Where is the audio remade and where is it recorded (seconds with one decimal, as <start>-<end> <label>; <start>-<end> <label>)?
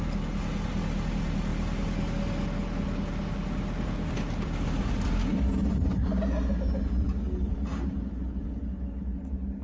0.0-9.6 recorded